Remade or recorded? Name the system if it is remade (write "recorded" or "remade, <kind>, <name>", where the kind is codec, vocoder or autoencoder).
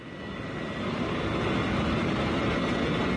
recorded